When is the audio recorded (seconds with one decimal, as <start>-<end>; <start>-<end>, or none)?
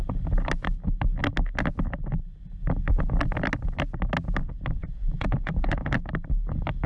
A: 0.0-4.8; 5.9-6.9